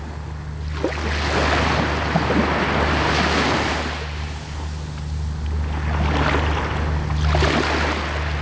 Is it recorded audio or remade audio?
recorded